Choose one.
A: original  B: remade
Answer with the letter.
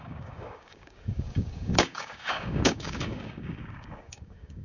B